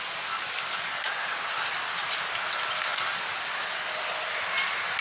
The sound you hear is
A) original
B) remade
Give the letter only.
A